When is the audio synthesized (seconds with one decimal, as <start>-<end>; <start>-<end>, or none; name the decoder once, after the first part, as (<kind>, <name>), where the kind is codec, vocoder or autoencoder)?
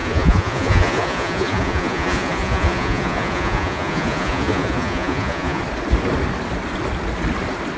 0.0-5.6 (vocoder, Vocos)